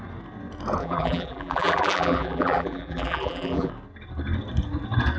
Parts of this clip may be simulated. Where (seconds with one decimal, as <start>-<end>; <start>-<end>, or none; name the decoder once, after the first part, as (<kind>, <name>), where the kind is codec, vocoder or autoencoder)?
0.8-3.7 (vocoder, BigVGAN v2)